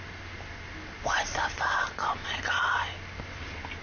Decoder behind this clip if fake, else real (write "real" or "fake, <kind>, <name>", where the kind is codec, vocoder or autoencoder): real